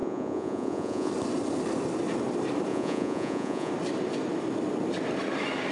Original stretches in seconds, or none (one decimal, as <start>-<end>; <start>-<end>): 1.1-2.7; 3.7-5.7